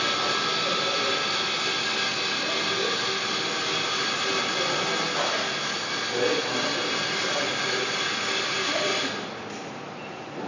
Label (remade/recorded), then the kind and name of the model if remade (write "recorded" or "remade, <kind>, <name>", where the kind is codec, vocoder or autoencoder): recorded